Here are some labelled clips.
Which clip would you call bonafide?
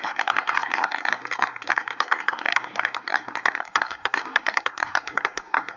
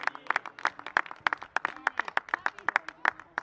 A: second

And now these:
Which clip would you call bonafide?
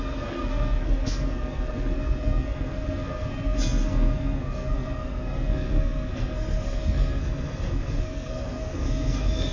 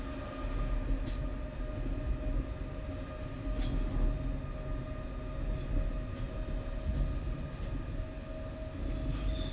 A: second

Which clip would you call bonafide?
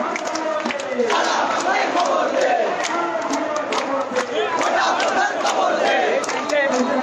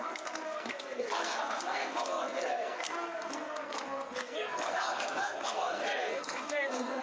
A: first